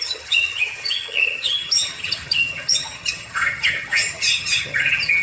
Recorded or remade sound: remade